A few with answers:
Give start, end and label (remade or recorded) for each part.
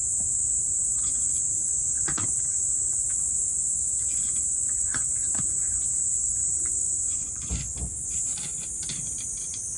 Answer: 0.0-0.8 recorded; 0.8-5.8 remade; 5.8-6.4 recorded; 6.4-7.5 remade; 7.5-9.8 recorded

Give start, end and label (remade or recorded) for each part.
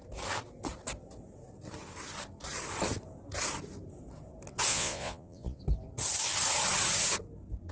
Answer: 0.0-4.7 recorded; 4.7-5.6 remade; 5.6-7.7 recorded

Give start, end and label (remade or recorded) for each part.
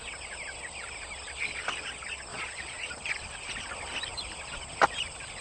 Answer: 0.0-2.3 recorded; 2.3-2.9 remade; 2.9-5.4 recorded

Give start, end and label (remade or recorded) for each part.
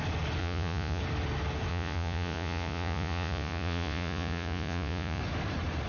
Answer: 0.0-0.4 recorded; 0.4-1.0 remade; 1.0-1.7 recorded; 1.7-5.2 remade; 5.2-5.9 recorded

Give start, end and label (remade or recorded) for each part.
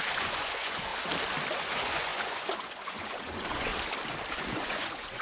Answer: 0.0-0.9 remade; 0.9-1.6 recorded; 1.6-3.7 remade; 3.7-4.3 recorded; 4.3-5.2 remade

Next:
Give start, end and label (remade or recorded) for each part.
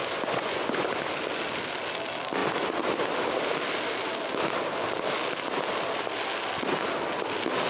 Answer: 0.0-1.0 remade; 1.0-7.7 recorded